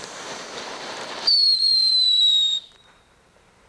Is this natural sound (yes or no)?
no